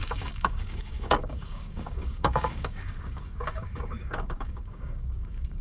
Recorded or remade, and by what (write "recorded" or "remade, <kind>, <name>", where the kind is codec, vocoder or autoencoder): remade, codec, DAC